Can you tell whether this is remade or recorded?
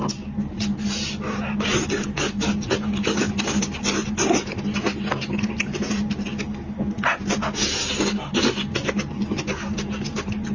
recorded